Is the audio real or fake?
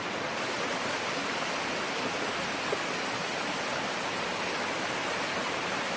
real